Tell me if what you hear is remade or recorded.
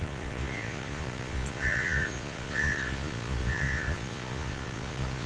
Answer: remade